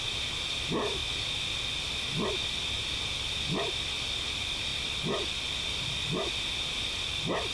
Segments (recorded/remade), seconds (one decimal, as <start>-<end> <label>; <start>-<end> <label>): 0.0-7.5 recorded